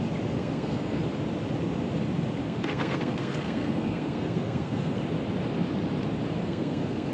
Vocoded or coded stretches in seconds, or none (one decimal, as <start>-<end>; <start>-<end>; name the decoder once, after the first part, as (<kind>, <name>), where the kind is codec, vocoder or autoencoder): 0.4-1.0 (codec, SNAC); 2.4-5.0; 6.4-7.1